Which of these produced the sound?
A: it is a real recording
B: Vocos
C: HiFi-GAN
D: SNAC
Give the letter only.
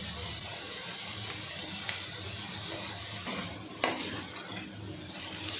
A